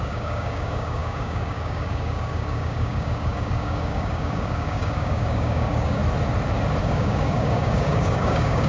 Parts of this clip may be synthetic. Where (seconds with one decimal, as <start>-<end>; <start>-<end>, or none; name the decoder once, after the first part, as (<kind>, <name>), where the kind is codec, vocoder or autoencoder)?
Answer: 0.0-6.0 (codec, DAC); 6.8-8.7